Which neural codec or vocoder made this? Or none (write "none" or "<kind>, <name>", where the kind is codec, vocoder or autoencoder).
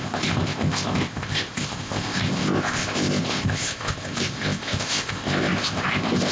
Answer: codec, ZipCodec